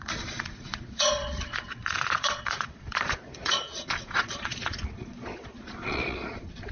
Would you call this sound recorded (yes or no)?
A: no